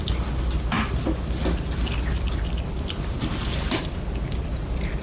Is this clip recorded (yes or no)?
yes